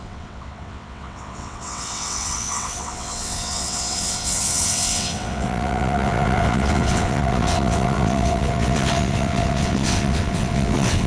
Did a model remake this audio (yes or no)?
yes